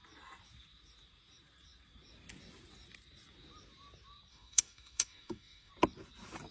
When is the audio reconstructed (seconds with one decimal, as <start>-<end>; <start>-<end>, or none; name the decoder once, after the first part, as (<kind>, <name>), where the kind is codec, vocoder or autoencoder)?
4.3-5.7 (autoencoder, DAC-VAE)